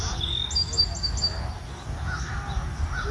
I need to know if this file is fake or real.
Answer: real